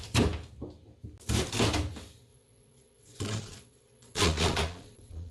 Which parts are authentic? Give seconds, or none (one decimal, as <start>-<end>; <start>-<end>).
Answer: 0.0-2.3